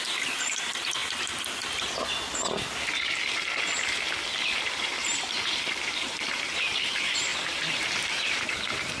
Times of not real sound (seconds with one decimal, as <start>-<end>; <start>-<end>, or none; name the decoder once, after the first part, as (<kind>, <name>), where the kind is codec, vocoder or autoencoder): 0.0-1.0 (vocoder, BigVGAN v2); 4.4-9.0